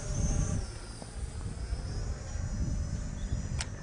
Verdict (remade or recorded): recorded